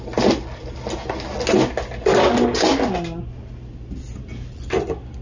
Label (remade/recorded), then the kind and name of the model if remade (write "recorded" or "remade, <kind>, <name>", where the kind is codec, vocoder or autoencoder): recorded